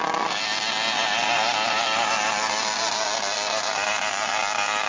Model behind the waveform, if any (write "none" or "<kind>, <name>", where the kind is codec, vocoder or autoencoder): none